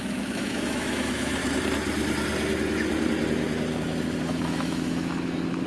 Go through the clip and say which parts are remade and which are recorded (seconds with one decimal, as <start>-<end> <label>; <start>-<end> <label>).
0.0-1.4 remade; 1.4-4.2 recorded; 4.2-5.7 remade